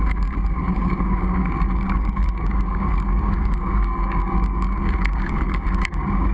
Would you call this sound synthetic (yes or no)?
yes